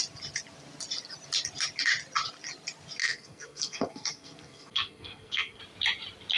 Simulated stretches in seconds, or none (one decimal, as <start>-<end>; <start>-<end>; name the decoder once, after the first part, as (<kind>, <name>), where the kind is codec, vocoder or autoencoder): 3.0-5.6 (codec, SNAC)